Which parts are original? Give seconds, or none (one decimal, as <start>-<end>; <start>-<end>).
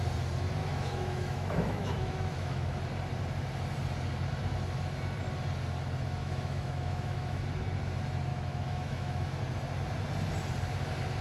0.0-0.6; 2.8-6.2; 7.4-8.3; 9.4-11.2